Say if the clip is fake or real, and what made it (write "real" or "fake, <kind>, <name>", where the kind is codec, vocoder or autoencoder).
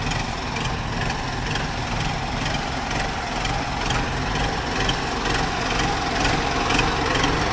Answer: real